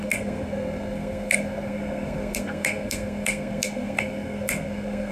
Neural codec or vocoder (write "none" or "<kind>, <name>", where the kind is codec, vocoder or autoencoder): codec, SNAC